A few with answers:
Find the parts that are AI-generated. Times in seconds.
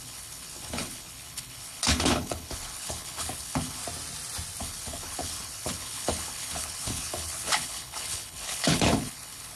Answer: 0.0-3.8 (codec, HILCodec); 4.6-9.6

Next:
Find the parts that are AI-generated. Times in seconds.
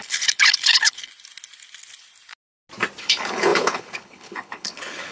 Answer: 0.0-1.1 (codec, HILCodec); 3.0-5.1